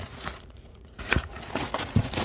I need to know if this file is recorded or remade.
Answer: remade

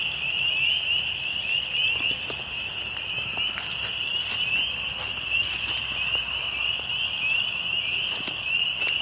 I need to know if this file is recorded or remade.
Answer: recorded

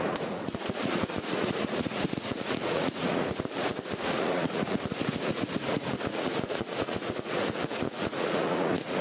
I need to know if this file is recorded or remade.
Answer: remade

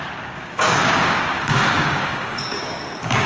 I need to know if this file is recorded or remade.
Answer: remade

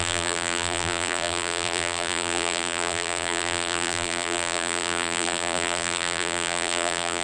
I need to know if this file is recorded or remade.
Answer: remade